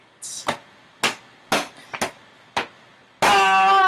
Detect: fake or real real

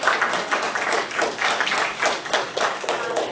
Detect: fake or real fake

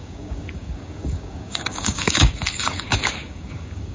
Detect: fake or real fake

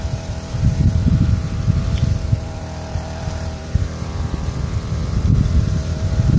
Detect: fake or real fake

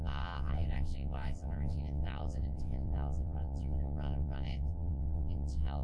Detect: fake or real fake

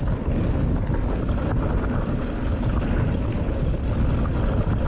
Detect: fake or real real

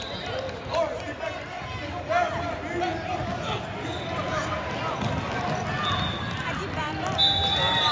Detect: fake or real real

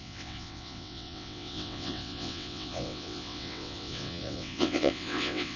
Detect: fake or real fake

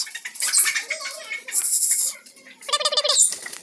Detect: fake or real real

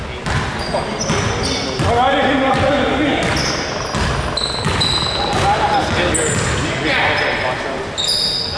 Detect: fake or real real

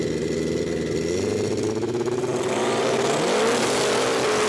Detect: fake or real real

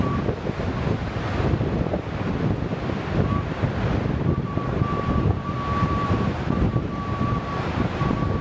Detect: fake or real real